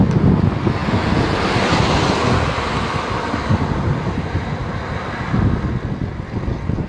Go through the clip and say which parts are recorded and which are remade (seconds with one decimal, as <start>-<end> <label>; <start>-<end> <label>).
0.0-6.9 recorded